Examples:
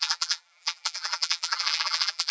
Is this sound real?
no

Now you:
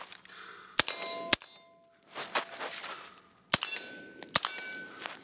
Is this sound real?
yes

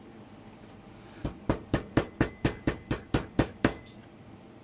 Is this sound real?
no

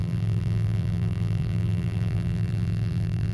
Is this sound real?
no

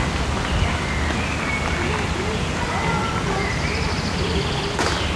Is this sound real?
yes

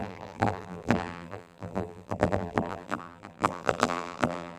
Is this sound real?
no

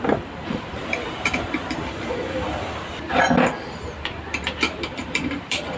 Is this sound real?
no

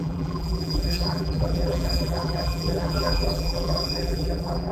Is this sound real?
no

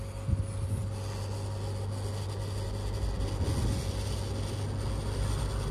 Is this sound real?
yes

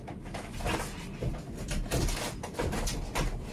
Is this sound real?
yes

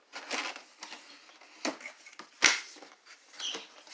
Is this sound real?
yes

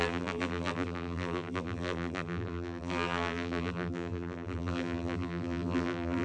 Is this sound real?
no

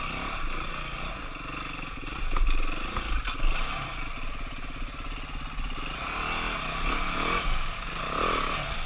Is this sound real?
yes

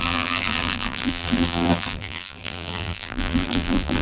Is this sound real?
no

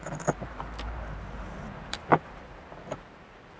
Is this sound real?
no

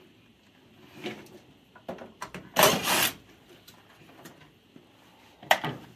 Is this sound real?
yes